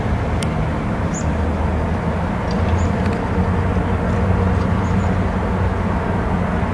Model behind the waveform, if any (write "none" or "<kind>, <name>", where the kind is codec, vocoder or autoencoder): none